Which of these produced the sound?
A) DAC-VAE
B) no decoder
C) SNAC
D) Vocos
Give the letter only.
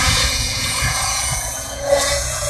D